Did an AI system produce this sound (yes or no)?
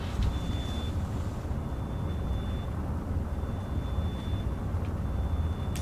no